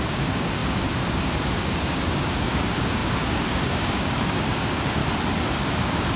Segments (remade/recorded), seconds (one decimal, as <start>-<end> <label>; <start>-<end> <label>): 0.0-5.0 remade; 5.0-5.8 recorded; 5.8-6.2 remade